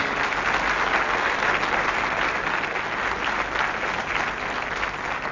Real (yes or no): yes